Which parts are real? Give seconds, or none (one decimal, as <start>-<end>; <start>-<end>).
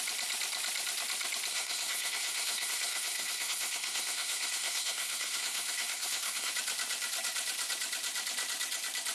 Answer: 0.0-1.5; 6.5-9.1